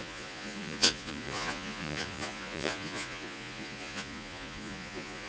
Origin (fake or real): fake